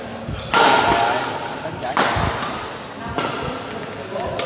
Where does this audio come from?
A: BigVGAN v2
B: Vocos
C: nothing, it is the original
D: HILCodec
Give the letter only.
C